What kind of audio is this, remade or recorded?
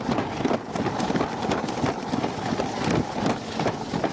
recorded